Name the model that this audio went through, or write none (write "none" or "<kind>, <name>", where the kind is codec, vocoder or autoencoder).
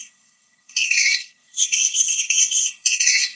codec, SNAC